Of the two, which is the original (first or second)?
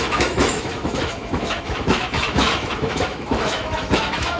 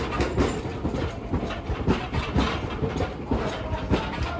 second